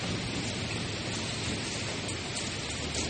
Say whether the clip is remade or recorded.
recorded